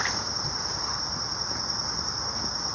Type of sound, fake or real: real